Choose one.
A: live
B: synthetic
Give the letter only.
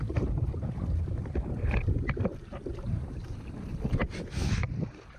A